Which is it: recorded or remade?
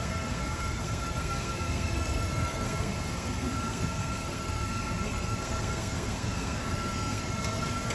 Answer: remade